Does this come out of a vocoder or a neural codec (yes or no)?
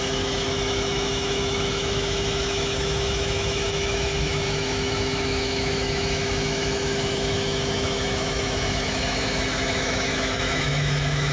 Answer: yes